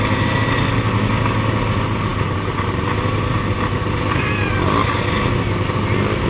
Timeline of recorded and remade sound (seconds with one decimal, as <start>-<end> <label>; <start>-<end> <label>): 0.0-6.3 recorded